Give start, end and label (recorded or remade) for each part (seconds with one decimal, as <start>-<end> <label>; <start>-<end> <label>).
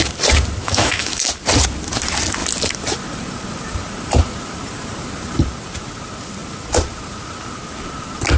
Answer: 0.0-0.6 recorded; 0.6-1.3 remade; 1.3-8.4 recorded